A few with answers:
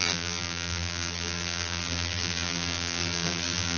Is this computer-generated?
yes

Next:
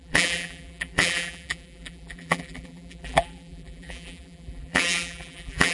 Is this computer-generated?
yes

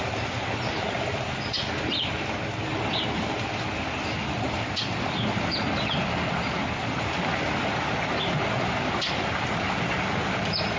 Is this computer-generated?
no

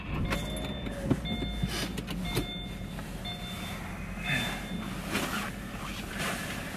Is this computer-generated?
no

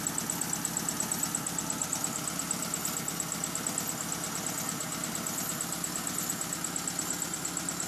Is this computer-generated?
no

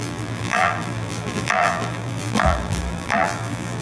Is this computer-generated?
yes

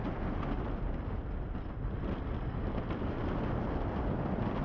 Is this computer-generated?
no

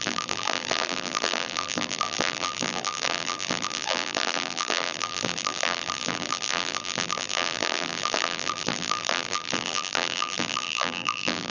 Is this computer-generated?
yes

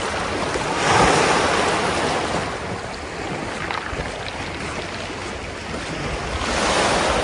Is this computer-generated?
no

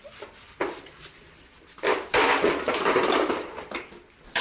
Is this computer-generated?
yes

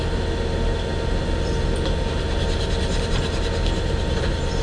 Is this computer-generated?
no